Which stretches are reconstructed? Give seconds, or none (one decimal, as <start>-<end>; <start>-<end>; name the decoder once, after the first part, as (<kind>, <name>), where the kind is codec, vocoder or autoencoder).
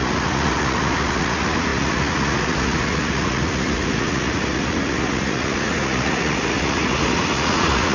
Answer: 0.0-7.9 (vocoder, Vocos)